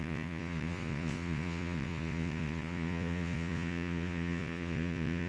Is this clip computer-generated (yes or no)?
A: yes